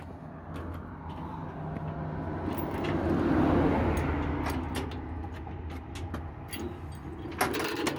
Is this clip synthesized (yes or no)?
no